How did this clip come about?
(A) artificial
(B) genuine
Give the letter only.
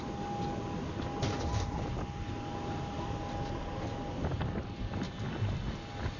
B